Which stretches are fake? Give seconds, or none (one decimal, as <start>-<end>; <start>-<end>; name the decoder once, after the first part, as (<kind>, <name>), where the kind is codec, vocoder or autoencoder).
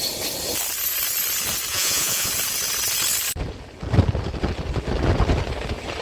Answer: 1.7-2.3 (vocoder, Vocos)